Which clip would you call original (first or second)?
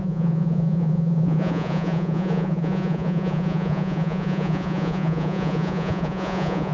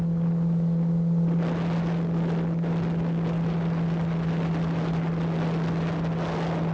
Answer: second